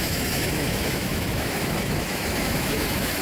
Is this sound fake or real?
fake